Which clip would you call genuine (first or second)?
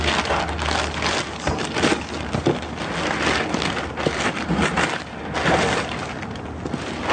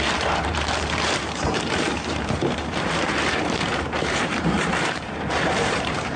first